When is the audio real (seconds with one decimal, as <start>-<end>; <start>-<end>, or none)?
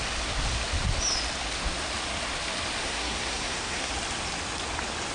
0.0-2.8; 3.9-5.1